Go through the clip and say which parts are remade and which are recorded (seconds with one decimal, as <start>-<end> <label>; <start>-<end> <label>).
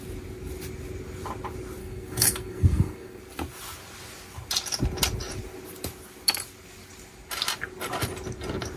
0.0-1.8 recorded; 1.8-3.2 remade; 3.2-8.8 recorded